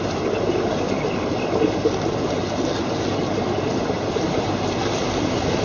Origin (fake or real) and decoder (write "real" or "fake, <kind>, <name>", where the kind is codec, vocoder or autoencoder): real